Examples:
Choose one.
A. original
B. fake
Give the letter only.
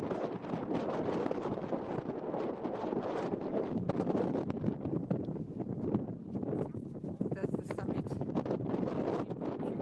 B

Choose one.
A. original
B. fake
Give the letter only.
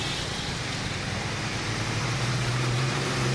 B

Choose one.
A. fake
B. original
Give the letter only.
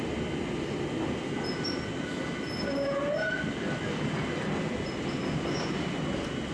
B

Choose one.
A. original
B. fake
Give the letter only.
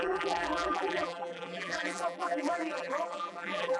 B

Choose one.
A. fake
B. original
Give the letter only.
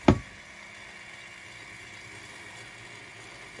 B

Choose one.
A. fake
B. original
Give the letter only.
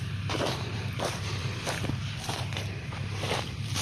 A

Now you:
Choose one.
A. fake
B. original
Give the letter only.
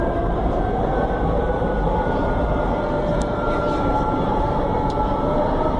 A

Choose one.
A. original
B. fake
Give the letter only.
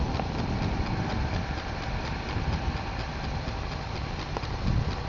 A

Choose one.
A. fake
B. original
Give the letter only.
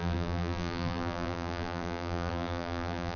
A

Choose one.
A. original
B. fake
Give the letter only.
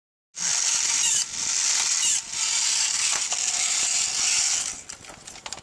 A